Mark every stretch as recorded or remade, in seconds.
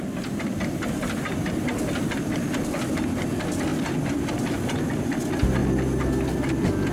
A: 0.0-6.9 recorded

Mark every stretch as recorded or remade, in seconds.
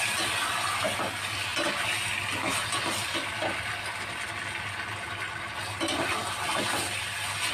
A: 0.0-7.5 recorded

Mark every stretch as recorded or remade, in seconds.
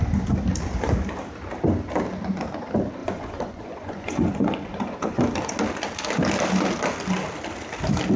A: 0.0-3.0 recorded; 3.0-5.2 remade; 5.2-8.2 recorded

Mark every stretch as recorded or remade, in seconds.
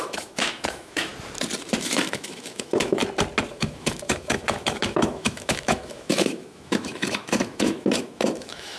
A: 0.0-1.1 remade; 1.1-1.8 recorded; 1.8-3.0 remade; 3.0-3.5 recorded; 3.5-8.8 remade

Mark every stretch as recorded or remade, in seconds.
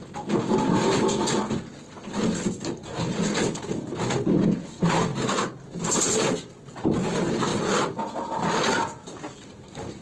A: 0.0-10.0 recorded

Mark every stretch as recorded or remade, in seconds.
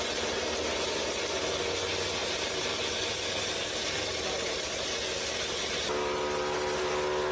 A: 0.0-2.2 recorded; 2.2-4.9 remade; 4.9-7.3 recorded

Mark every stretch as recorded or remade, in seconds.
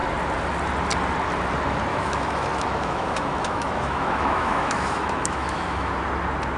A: 0.0-1.9 recorded; 1.9-5.9 remade; 5.9-6.6 recorded